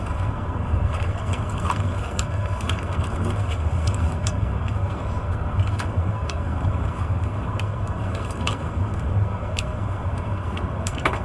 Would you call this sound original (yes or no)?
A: no